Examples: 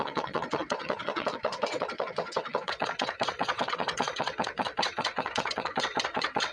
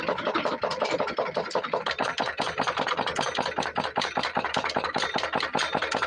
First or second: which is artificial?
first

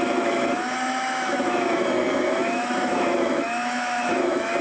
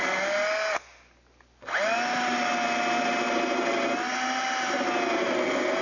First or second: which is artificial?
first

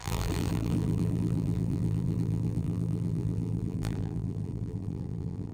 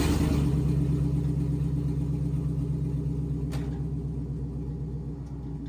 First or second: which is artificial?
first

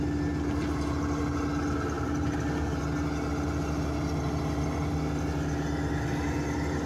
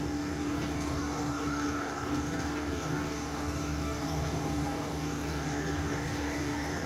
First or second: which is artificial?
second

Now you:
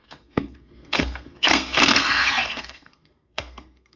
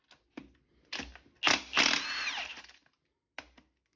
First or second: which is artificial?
first